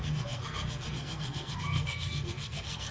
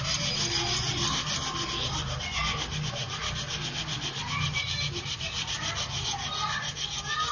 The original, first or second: second